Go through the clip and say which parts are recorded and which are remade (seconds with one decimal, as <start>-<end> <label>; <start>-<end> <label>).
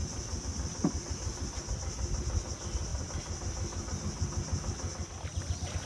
0.0-1.8 remade; 1.8-5.9 recorded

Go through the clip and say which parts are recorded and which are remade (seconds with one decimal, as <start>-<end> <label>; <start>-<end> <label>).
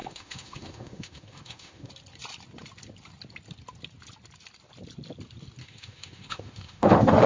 0.0-1.9 remade; 1.9-5.6 recorded; 5.6-7.3 remade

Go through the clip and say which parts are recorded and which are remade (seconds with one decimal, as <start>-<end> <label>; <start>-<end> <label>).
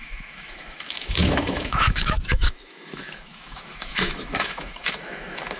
0.0-5.6 remade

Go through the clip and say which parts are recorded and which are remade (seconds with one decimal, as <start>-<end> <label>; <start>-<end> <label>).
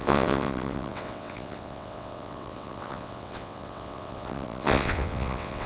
0.0-5.7 remade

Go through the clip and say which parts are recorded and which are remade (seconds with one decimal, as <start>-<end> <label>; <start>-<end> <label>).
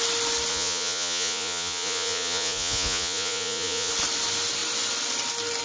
0.0-0.5 recorded; 0.5-3.9 remade; 3.9-5.6 recorded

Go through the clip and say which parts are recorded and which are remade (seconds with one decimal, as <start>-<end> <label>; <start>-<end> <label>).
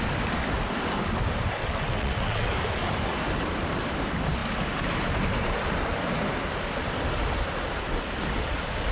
0.0-1.6 recorded; 1.6-2.5 remade; 2.5-8.9 recorded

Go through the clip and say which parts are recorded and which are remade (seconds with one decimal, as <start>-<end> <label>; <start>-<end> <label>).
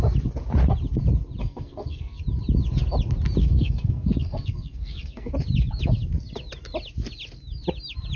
0.0-1.4 recorded; 1.4-2.2 remade; 2.2-3.4 recorded; 3.4-5.3 remade; 5.3-8.2 recorded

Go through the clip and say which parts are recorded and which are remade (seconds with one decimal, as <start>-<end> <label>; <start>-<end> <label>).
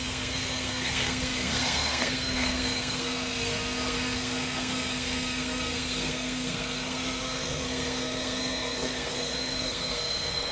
0.0-10.5 remade